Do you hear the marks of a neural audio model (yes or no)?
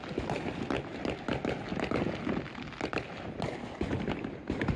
no